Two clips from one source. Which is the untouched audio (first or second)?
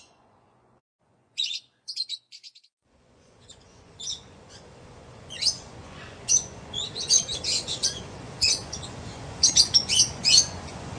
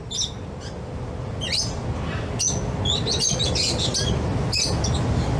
second